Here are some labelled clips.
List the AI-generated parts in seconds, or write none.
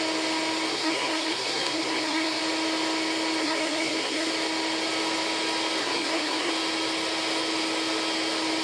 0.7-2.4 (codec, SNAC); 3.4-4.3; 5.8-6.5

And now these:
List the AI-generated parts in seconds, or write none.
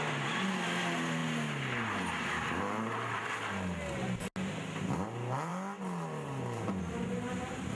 none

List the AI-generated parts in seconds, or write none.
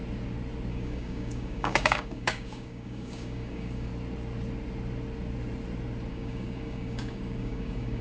0.7-3.9 (codec, DAC); 6.1-8.0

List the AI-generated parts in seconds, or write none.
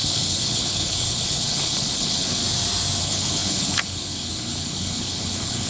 0.0-2.4 (codec, HILCodec); 3.0-5.7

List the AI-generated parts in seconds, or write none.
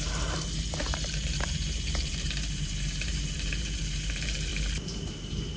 0.0-4.5 (vocoder, BigVGAN v2); 5.1-5.6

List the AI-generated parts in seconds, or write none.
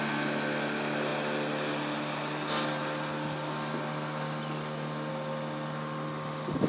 none